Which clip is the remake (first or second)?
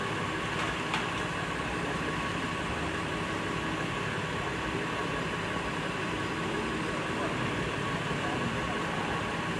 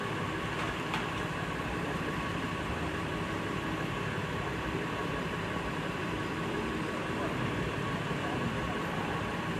second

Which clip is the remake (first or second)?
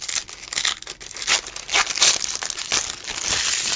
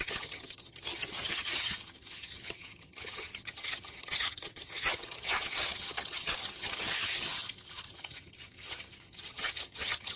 second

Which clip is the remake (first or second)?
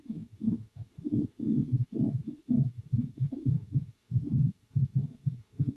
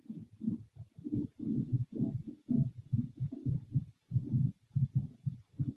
first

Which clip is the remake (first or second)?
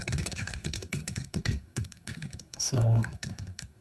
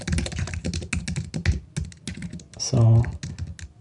first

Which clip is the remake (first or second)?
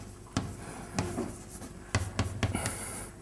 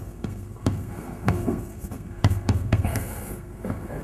second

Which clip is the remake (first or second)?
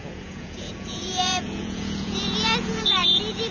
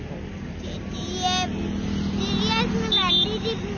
first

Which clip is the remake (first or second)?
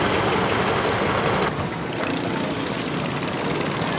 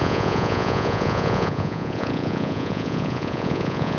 second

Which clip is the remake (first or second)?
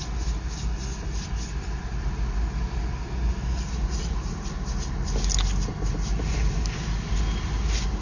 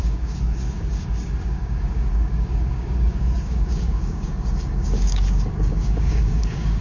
second